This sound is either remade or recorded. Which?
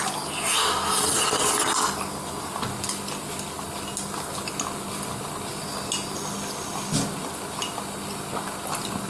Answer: recorded